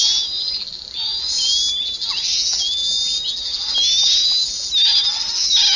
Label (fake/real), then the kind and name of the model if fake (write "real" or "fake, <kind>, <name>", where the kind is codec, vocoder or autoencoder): real